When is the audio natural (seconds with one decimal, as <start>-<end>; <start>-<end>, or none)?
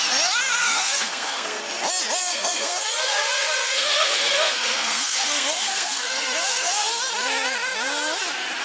0.0-0.6; 1.6-2.2; 7.0-8.6